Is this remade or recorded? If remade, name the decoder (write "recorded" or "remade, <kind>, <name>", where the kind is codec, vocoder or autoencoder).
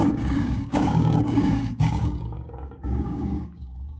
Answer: remade, codec, DAC